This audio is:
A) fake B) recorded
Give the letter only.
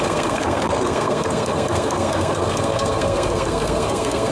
A